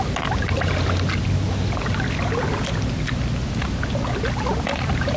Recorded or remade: recorded